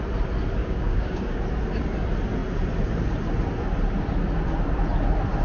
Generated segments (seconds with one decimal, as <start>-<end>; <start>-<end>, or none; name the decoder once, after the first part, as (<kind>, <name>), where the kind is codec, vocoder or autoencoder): 0.6-1.4 (codec, DAC)